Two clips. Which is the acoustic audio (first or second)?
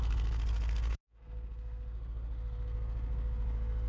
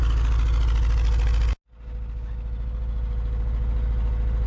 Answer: second